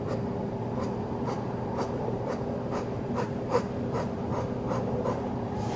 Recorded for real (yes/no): no